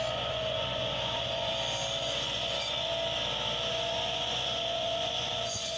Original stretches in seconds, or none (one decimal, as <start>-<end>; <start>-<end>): 1.5-2.0; 2.9-3.7